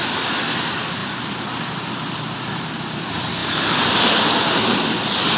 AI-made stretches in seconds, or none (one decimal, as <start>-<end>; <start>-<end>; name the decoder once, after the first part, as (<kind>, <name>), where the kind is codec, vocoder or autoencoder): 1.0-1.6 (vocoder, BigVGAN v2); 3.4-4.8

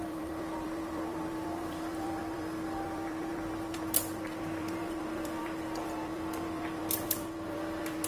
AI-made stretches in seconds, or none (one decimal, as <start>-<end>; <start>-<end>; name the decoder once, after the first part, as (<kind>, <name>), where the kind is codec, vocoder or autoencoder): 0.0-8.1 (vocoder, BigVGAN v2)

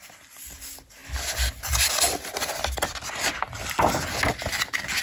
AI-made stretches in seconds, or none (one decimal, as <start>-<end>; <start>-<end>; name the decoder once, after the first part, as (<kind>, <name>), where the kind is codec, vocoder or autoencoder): none

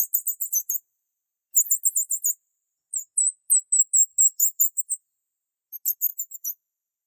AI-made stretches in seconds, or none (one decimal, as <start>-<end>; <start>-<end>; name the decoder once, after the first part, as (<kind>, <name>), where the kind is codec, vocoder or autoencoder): 6.1-7.1 (vocoder, BigVGAN v2)